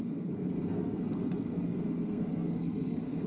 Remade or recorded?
remade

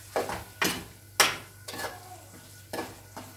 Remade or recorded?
recorded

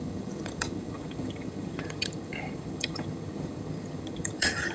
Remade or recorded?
remade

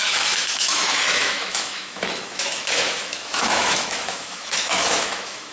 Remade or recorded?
remade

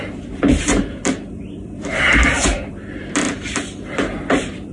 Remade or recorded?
remade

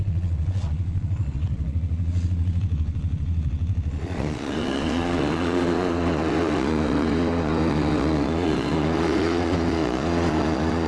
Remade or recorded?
remade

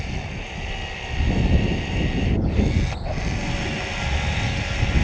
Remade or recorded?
recorded